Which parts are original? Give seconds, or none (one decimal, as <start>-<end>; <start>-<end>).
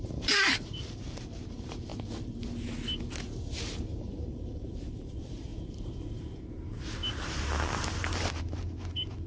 1.9-3.6; 7.0-8.3